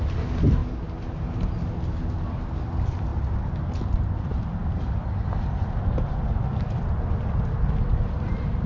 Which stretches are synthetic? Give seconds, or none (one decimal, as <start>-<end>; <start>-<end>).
none